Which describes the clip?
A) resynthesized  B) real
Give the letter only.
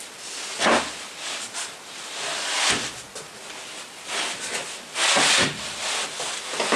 B